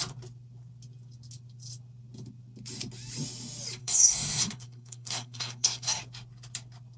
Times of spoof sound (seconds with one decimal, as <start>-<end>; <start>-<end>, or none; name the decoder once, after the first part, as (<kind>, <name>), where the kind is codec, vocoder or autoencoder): 3.8-6.0 (codec, SNAC)